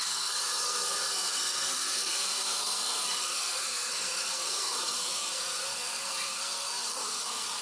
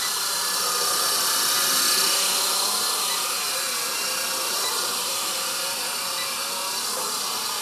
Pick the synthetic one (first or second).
first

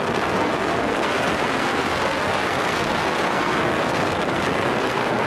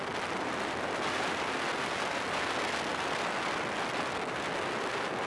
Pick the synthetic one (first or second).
first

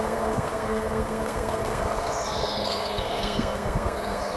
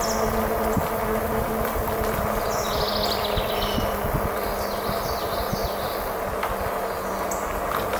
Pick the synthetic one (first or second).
first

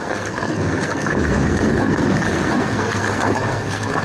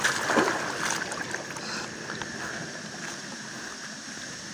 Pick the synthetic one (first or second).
first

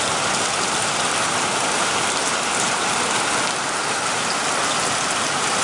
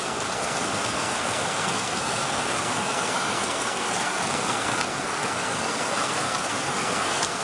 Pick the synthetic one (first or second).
second